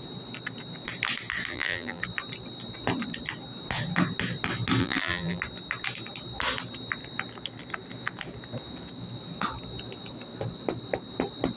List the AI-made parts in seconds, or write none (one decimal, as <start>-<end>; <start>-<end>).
1.5-2.0; 4.8-5.4